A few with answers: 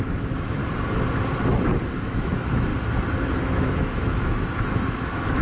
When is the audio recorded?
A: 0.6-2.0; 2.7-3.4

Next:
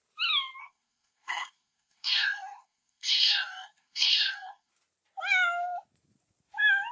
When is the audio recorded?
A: 0.0-0.6; 4.7-6.9

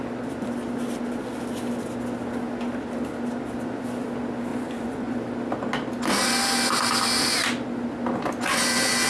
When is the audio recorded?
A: 0.0-4.5; 5.2-9.1

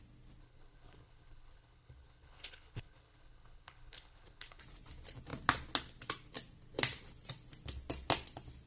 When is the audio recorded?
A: 0.0-0.4; 4.6-8.7

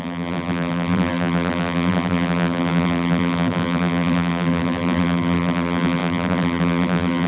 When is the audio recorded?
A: none

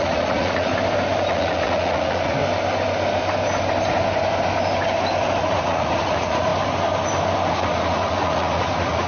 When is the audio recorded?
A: 0.7-1.3; 2.4-5.5; 6.5-7.5

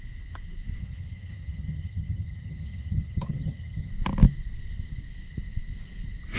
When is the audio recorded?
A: 0.0-0.8; 3.9-6.4

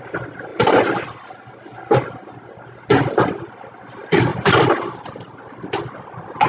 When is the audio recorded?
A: 0.0-0.5; 1.5-6.5